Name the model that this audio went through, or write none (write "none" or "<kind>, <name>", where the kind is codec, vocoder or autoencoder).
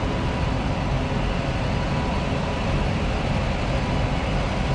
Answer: none